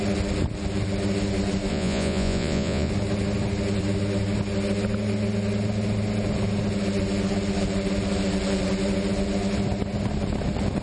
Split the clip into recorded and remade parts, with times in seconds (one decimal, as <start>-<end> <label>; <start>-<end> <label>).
0.0-1.7 recorded; 1.7-2.9 remade; 2.9-10.8 recorded